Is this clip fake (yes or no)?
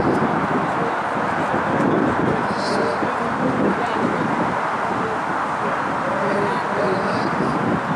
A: no